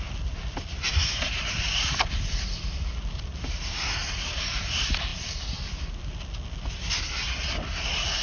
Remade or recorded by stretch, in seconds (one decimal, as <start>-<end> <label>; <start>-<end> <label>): 0.0-8.2 recorded